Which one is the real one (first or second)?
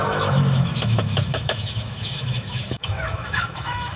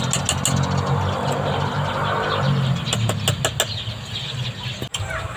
second